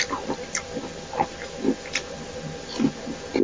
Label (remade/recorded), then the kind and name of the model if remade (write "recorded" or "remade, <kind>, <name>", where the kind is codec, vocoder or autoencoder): recorded